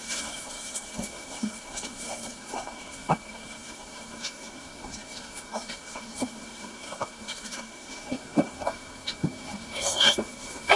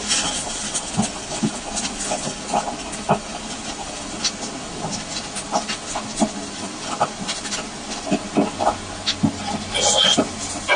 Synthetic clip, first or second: first